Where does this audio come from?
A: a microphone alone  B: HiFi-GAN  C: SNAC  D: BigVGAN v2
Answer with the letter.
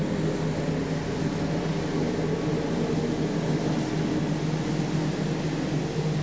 A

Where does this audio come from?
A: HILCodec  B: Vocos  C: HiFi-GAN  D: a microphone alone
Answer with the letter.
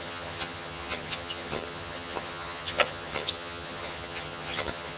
C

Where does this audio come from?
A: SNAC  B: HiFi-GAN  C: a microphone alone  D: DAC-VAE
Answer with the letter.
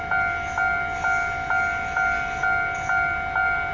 C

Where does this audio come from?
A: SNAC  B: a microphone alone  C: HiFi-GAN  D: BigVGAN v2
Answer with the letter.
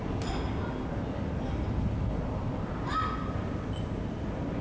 B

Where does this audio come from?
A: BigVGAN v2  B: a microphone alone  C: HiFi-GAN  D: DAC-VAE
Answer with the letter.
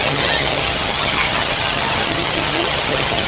C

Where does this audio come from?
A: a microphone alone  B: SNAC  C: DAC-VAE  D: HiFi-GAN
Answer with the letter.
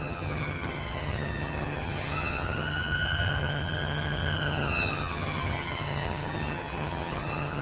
D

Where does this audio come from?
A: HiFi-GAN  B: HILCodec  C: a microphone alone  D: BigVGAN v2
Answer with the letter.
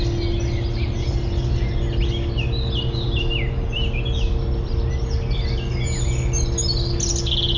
C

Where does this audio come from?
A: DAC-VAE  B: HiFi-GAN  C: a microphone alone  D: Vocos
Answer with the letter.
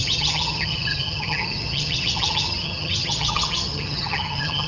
B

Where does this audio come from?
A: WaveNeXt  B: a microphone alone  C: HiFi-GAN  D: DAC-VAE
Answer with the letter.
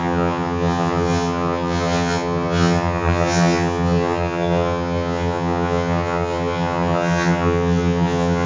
C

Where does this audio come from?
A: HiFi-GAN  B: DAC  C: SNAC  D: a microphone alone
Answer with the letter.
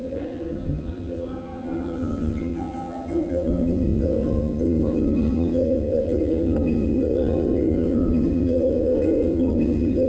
A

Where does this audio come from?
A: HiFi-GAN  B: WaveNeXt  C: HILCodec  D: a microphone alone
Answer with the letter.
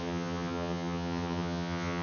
A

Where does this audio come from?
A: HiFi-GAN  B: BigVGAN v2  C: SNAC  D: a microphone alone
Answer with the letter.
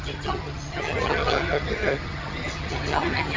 A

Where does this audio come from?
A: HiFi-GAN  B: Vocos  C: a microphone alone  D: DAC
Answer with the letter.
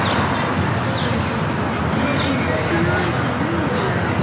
C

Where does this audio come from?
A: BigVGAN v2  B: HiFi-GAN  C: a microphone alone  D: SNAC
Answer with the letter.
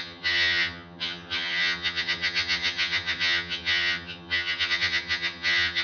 B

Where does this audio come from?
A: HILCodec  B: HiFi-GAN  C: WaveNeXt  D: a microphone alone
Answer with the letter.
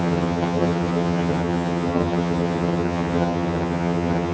B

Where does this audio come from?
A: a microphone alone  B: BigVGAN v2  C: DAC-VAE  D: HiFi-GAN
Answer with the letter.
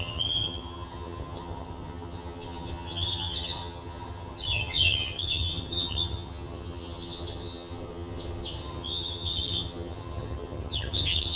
D